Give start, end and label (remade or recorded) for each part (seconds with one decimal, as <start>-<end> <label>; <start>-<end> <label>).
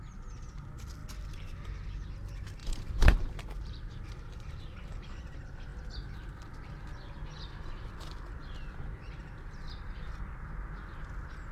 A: 0.0-2.6 recorded; 2.6-5.1 remade; 5.1-11.5 recorded